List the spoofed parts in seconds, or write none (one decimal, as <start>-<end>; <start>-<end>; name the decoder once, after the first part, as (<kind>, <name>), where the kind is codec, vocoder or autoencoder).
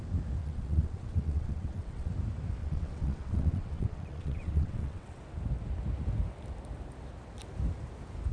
0.4-2.1 (vocoder, WaveNeXt); 2.6-5.2